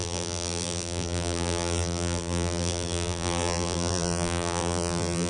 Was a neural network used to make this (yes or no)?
yes